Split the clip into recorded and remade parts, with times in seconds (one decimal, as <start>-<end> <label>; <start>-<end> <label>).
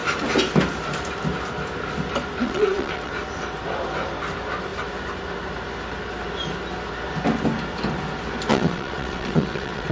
0.0-2.4 recorded; 2.4-3.1 remade; 3.1-8.5 recorded; 8.5-9.9 remade